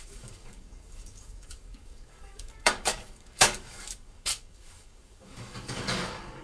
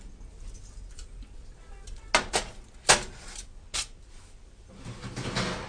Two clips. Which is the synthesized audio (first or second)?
first